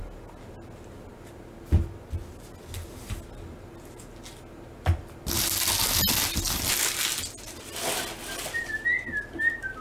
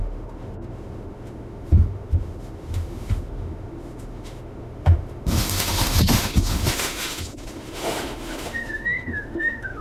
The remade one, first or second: second